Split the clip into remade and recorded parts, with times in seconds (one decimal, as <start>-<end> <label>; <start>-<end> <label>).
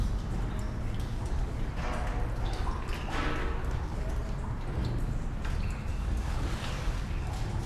0.0-1.1 recorded; 1.1-1.7 remade; 1.7-3.4 recorded; 3.4-4.1 remade; 4.1-5.9 recorded; 5.9-7.3 remade; 7.3-7.7 recorded